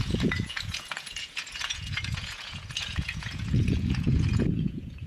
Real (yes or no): no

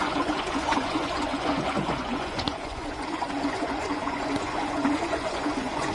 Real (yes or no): no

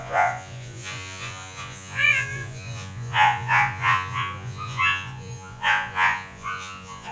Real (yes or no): no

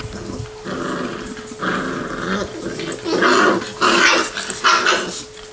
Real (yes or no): yes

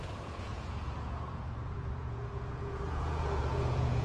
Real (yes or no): no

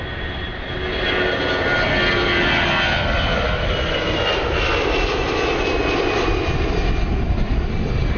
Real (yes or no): yes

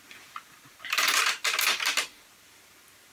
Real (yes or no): yes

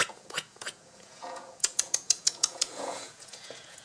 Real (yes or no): no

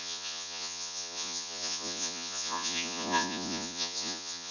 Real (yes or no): no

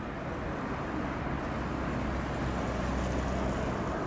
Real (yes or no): yes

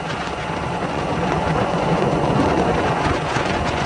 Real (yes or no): no